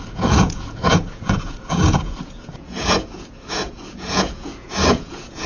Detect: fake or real fake